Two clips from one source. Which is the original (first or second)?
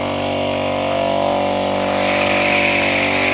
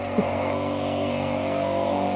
first